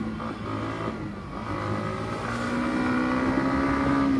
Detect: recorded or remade recorded